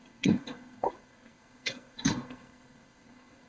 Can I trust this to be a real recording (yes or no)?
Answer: no